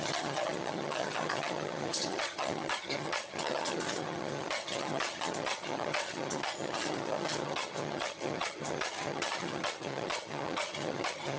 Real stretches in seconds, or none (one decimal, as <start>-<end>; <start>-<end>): none